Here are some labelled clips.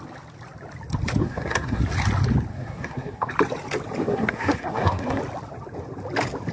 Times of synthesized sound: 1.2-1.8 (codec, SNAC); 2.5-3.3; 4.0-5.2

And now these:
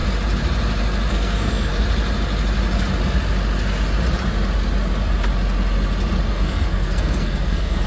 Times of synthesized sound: 1.1-1.7 (codec, SNAC); 6.3-7.9

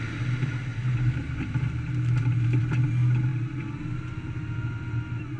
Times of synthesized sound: 0.7-2.6 (vocoder, BigVGAN v2); 3.3-3.8